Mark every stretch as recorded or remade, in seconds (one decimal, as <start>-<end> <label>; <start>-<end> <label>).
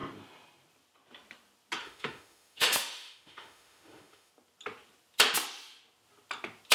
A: 0.0-1.8 recorded; 1.8-4.3 remade; 4.3-6.7 recorded